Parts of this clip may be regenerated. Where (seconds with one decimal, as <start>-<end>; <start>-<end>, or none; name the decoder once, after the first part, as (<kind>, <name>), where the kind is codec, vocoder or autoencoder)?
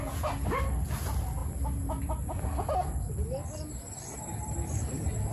none